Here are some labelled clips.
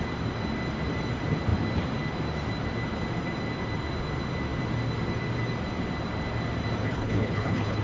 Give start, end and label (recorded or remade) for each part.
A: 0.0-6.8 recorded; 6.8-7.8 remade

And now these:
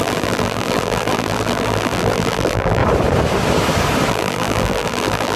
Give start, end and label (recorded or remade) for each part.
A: 0.0-2.8 remade; 2.8-4.1 recorded; 4.1-5.4 remade

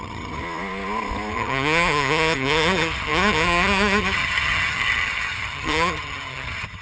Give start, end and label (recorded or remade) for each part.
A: 0.0-0.4 remade; 0.4-1.3 recorded; 1.3-6.8 remade

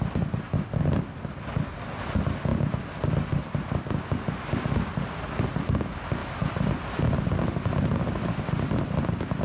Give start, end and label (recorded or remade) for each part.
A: 0.0-9.4 recorded

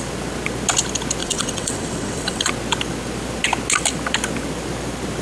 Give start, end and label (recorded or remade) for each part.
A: 0.0-1.2 recorded; 1.2-2.5 remade; 2.5-5.2 recorded

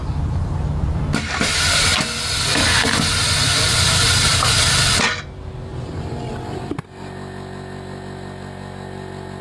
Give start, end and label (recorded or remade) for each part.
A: 0.0-4.3 recorded; 4.3-5.0 remade; 5.0-5.7 recorded; 5.7-6.3 remade; 6.3-9.4 recorded

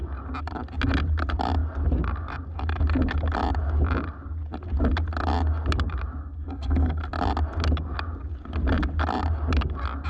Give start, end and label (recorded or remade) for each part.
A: 0.0-6.2 recorded; 6.2-7.0 remade; 7.0-10.1 recorded